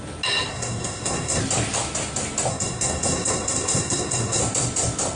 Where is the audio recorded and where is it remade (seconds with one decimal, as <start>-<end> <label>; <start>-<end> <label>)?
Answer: 0.0-0.5 recorded; 0.5-1.4 remade; 1.4-2.5 recorded; 2.5-4.4 remade; 4.4-5.2 recorded